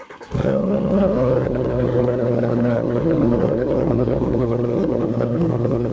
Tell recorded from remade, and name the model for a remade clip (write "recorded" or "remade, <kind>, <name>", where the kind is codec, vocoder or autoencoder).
remade, codec, SNAC